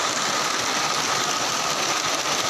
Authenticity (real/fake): real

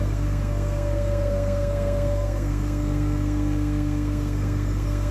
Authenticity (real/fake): fake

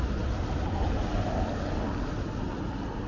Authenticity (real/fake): real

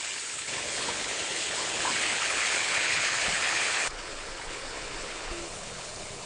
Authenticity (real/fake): fake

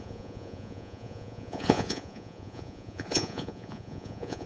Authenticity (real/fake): fake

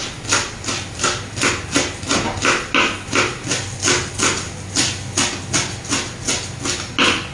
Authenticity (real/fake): real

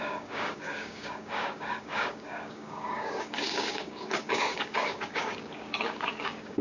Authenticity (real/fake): fake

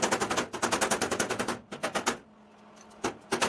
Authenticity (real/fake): real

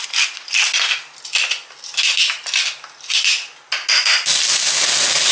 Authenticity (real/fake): real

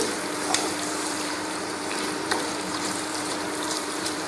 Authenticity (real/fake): fake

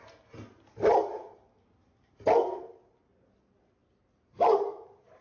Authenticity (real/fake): real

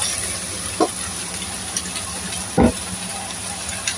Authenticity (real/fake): real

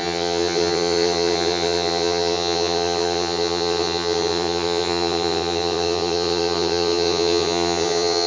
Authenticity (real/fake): fake